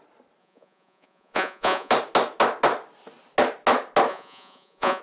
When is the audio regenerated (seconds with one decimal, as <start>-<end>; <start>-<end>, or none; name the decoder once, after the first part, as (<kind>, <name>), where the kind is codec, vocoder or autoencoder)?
0.4-1.9 (vocoder, Vocos); 4.1-5.0